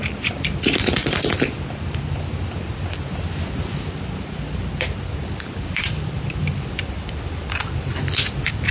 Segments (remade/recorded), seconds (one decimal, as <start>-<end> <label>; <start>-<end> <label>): 0.0-1.0 remade; 1.0-4.7 recorded; 4.7-8.7 remade